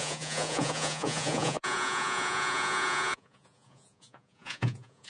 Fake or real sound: fake